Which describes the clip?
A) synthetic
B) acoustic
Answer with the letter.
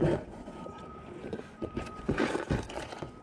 A